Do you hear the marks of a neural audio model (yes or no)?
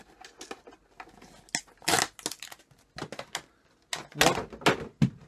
no